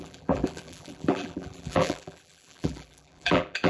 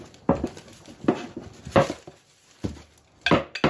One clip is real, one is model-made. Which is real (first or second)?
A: second